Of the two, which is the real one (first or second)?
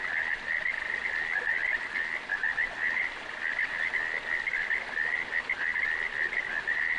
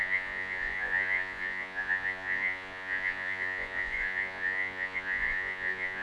first